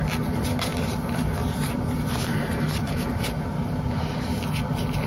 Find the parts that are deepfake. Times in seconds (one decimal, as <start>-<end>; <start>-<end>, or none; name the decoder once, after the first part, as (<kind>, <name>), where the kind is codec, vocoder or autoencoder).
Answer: 0.7-3.8 (vocoder, BigVGAN v2)